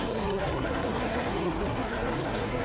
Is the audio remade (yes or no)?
yes